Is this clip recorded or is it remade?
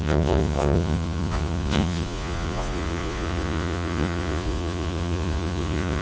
remade